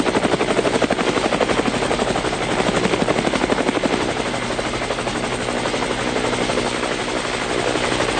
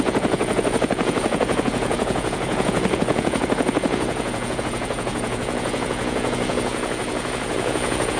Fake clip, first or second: second